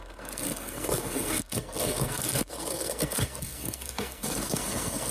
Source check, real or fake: fake